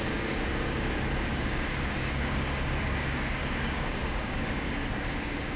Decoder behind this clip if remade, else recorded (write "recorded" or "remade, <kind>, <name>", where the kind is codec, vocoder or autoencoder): remade, codec, DAC